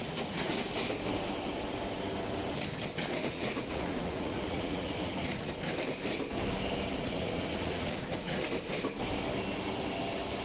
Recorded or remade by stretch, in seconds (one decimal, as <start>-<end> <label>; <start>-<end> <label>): 0.0-0.5 remade; 0.5-3.2 recorded; 3.2-5.5 remade; 5.5-7.0 recorded; 7.0-8.4 remade; 8.4-10.4 recorded